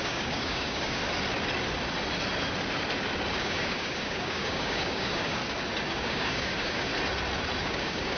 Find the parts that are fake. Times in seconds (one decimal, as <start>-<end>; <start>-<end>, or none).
0.0-1.0; 3.4-5.4; 5.9-6.9; 7.6-8.2